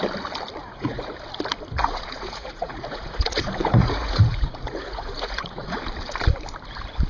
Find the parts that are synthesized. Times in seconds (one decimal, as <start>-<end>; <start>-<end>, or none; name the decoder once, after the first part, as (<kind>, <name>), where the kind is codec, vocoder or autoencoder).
0.6-1.1 (vocoder, Vocos); 1.8-5.8